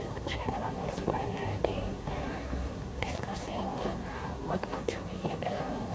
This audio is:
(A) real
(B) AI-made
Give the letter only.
B